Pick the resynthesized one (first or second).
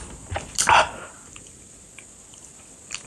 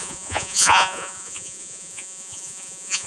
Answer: second